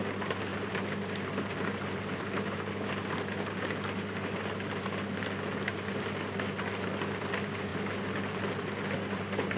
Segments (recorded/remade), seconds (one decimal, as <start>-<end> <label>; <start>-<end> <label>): 0.0-9.6 recorded